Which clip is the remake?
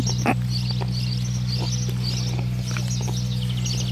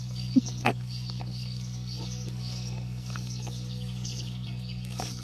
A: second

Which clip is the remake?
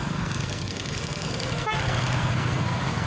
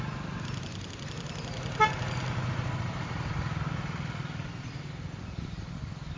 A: first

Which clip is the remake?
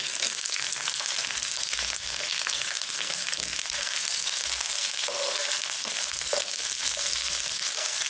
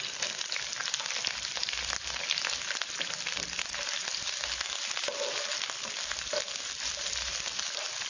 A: first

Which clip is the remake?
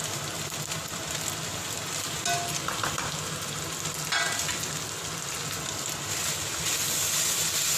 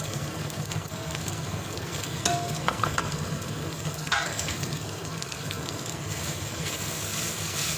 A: second